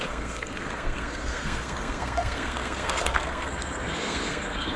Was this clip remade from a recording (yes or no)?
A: yes